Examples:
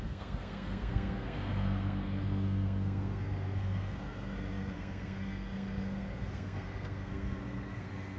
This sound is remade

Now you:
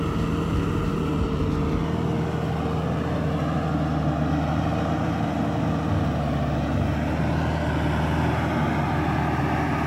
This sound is recorded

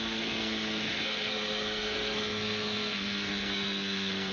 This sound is remade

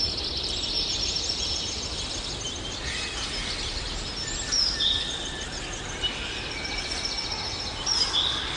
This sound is recorded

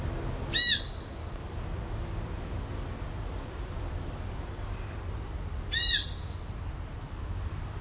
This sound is recorded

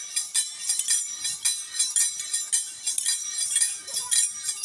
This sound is recorded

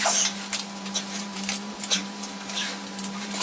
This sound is recorded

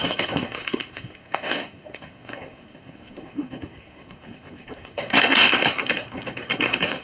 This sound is remade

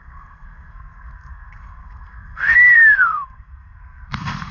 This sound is remade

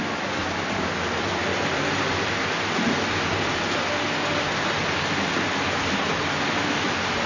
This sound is recorded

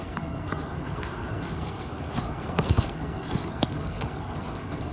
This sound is remade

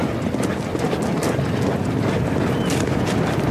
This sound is recorded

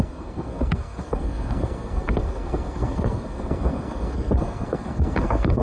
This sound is remade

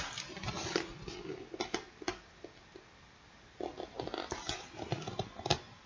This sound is recorded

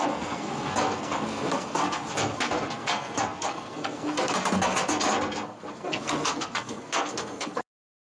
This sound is remade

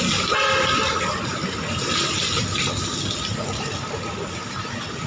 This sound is recorded